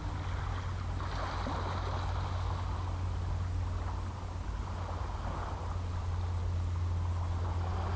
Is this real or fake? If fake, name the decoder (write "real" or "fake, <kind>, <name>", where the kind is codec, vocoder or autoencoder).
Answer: real